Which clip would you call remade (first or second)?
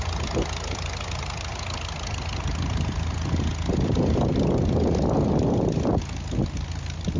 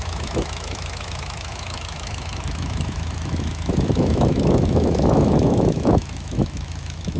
second